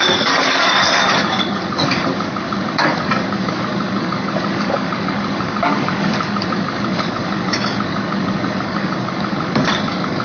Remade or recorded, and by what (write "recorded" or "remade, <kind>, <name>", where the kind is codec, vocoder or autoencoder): remade, codec, DAC